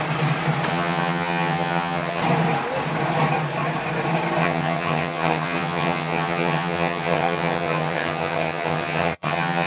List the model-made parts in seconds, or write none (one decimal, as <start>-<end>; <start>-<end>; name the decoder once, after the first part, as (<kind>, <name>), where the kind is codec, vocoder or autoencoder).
0.7-2.2 (vocoder, HiFi-GAN); 4.4-9.7